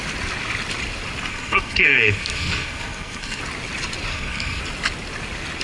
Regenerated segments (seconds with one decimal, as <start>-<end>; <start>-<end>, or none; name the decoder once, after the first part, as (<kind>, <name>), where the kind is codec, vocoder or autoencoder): 1.3-3.4 (codec, SNAC); 4.1-4.6